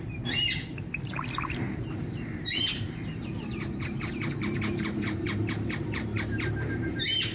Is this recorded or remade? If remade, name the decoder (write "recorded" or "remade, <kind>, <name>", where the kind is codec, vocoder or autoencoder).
remade, vocoder, BigVGAN v2